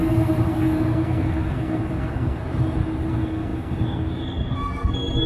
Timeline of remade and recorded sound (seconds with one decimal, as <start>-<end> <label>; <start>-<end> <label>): 0.0-2.4 remade; 2.4-3.1 recorded; 3.1-5.3 remade